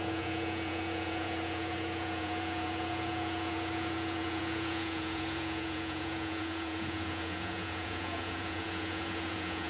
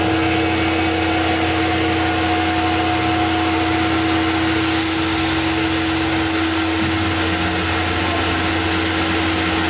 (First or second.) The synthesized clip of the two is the first